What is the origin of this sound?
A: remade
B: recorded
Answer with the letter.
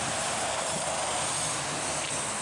B